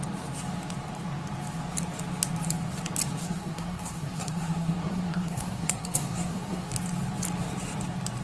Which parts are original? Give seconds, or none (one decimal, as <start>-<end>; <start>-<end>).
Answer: 0.0-3.2; 6.7-8.2